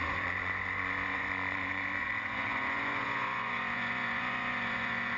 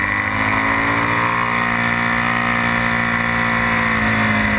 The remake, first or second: first